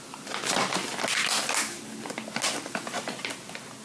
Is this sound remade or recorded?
recorded